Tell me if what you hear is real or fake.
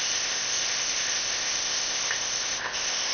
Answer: fake